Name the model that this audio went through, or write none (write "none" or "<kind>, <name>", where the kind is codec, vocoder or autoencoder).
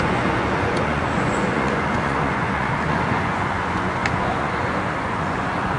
vocoder, Vocos